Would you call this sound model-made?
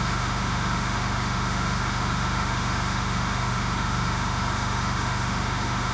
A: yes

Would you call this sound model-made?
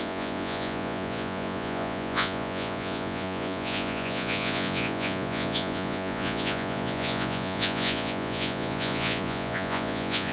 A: yes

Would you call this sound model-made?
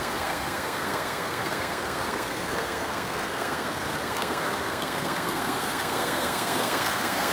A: yes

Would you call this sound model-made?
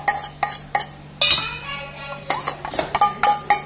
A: no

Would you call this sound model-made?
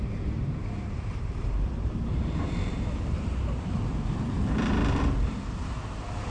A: yes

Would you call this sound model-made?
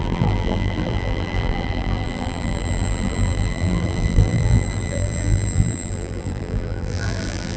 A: yes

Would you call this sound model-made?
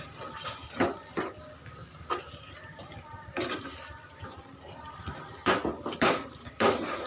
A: yes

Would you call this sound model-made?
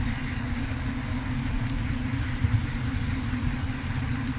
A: no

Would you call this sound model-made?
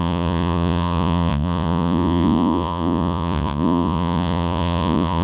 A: yes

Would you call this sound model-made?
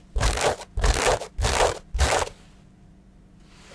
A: no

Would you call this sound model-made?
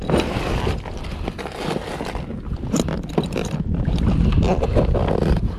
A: no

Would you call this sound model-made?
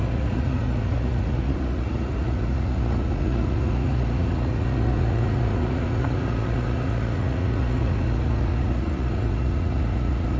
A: yes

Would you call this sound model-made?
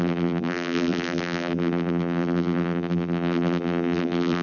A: yes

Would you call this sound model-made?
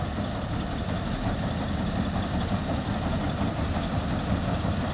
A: no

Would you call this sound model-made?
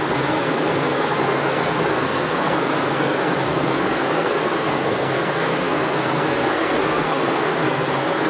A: yes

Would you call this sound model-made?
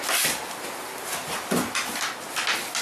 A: no